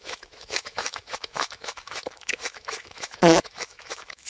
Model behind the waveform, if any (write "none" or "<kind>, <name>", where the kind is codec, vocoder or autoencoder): autoencoder, DAC-VAE